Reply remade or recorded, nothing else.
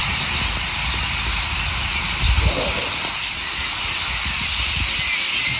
recorded